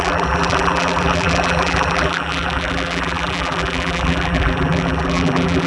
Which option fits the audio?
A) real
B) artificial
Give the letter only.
B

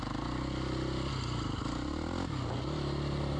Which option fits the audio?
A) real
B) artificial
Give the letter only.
A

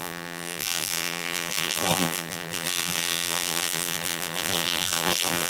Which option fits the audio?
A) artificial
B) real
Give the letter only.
A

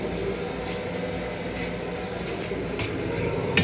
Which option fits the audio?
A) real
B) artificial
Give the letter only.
A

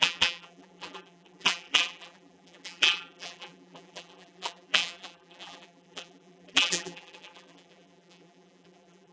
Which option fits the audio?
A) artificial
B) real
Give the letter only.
A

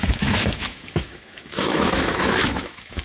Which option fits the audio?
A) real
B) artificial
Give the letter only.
B